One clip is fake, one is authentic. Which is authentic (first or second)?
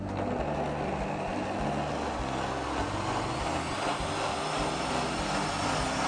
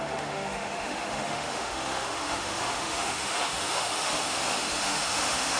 first